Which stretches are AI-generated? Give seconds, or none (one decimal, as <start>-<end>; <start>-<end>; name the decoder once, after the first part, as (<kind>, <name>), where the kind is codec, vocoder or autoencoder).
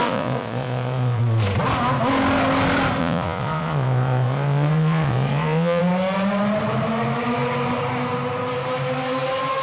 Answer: 0.0-1.2 (vocoder, Vocos); 3.0-5.8